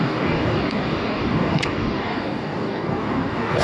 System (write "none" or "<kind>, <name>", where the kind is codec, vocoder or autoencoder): codec, DAC